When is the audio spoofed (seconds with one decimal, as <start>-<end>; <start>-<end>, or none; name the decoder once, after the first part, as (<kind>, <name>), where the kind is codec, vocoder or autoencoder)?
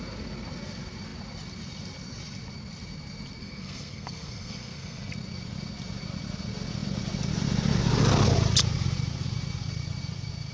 3.4-5.1 (codec, SNAC)